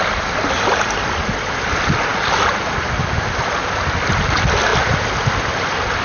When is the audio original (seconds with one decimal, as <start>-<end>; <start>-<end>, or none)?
0.0-6.0